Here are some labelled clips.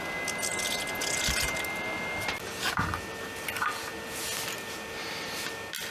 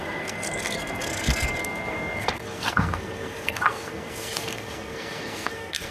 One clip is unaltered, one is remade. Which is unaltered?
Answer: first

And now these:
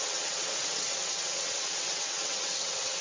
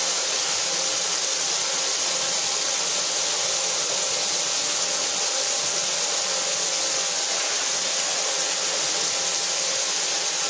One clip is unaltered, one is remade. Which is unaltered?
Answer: second